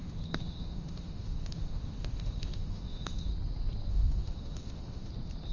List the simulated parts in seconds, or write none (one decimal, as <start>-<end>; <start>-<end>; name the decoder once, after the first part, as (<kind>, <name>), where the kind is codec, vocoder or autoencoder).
0.0-3.3 (autoencoder, DAC-VAE); 3.9-5.1